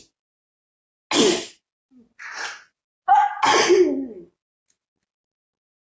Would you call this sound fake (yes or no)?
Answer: no